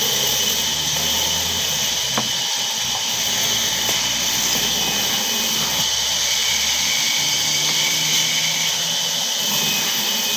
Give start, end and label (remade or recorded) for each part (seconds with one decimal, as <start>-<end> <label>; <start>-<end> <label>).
0.0-10.4 recorded